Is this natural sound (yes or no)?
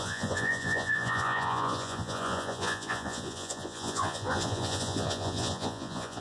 no